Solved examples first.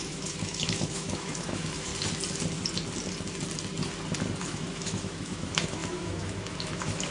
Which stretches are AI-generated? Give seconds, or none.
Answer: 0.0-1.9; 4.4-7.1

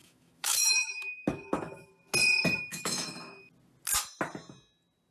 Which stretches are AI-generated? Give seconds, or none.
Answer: 0.0-1.9; 2.7-3.4

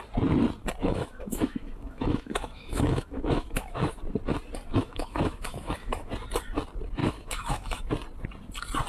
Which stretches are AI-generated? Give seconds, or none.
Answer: 0.8-4.0; 4.7-6.1; 7.0-7.9